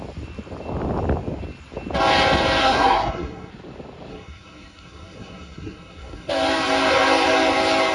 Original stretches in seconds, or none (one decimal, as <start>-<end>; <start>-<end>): 0.0-2.6; 3.5-4.1; 6.3-7.9